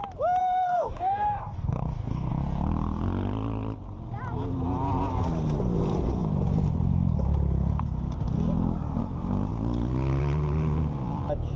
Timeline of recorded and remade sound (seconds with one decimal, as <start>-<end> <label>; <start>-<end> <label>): 0.0-0.4 recorded; 0.4-2.3 remade; 2.3-11.6 recorded